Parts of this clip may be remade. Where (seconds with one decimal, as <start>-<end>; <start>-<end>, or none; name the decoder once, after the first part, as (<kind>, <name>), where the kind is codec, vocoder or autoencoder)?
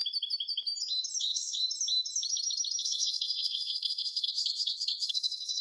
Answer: 1.2-1.6 (codec, SNAC); 2.8-5.6